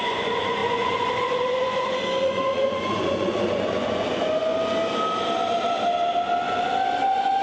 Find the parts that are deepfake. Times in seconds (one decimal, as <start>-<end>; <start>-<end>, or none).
0.0-4.5; 7.0-7.4